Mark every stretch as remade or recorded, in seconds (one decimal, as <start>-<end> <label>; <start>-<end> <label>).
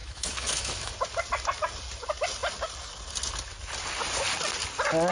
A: 0.0-0.9 remade; 0.9-5.1 recorded